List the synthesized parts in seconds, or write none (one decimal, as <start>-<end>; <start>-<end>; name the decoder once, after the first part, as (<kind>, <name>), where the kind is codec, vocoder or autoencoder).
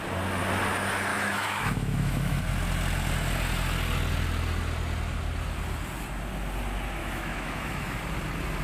1.1-2.4 (autoencoder, DAC-VAE); 7.0-8.0